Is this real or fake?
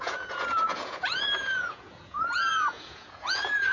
fake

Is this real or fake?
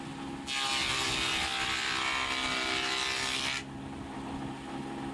real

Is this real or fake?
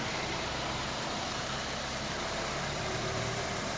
fake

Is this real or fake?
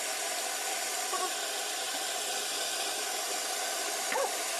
real